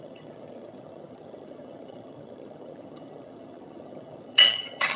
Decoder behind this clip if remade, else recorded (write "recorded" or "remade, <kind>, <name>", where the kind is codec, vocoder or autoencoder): remade, vocoder, HiFi-GAN